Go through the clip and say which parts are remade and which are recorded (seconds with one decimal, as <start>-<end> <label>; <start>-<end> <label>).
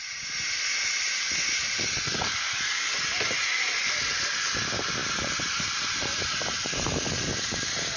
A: 0.0-0.7 recorded; 0.7-2.4 remade; 2.4-5.0 recorded; 5.0-7.3 remade; 7.3-8.0 recorded